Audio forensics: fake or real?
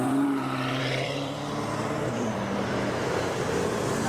fake